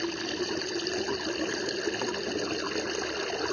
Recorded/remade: recorded